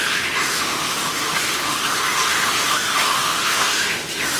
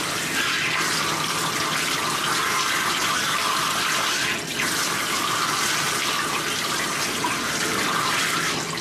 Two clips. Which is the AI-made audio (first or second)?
first